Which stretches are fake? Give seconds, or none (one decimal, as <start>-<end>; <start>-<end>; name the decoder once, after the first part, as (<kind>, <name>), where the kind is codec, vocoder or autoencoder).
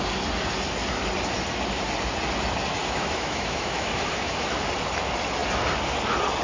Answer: 2.8-4.6 (autoencoder, DAC-VAE)